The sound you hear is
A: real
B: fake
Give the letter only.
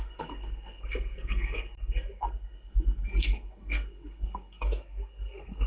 B